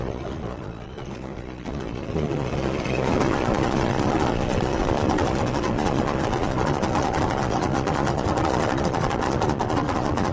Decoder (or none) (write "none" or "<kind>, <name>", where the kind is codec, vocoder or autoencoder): vocoder, Vocos